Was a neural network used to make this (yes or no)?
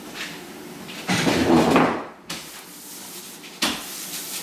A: yes